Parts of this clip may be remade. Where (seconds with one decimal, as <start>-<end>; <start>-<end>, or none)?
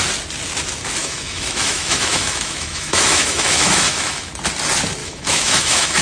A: 1.0-4.3; 5.0-6.0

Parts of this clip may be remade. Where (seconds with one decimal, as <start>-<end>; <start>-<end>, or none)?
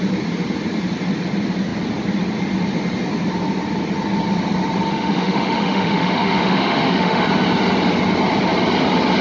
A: 4.9-7.2